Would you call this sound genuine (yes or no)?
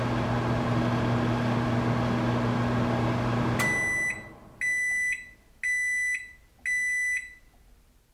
yes